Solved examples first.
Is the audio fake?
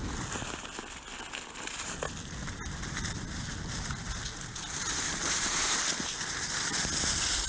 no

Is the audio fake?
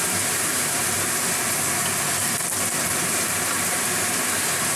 yes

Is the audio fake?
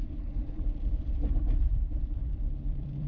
yes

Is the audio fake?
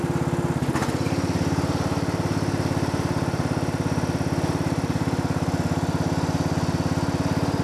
no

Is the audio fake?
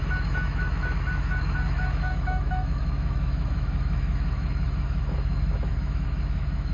yes